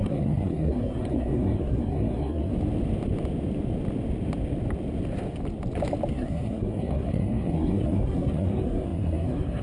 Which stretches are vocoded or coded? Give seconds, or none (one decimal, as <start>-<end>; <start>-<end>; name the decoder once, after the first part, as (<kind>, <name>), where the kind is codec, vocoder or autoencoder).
0.0-2.5 (codec, SNAC); 6.1-9.6